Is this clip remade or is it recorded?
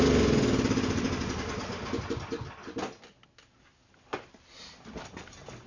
recorded